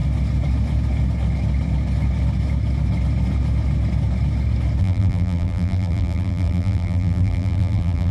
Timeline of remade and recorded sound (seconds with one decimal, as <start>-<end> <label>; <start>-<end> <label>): 0.0-4.8 recorded; 4.8-8.1 remade